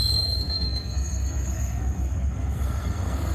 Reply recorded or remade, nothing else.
remade